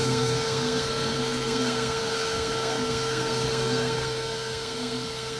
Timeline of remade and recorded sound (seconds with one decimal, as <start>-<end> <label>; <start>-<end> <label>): 0.0-5.4 remade